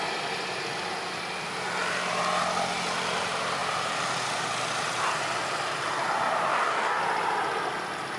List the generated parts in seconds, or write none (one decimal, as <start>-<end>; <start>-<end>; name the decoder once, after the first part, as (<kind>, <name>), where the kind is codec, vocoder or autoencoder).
6.5-7.0 (codec, DAC)